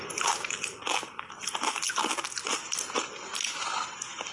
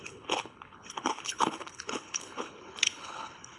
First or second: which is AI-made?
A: second